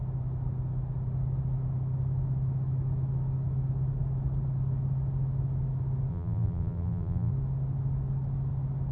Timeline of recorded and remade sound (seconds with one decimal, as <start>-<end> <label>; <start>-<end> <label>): 0.0-6.1 recorded; 6.1-7.3 remade; 7.3-8.9 recorded